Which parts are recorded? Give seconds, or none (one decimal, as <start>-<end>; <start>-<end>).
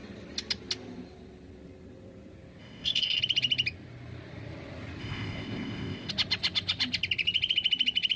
0.0-2.6; 3.2-5.0; 6.1-8.2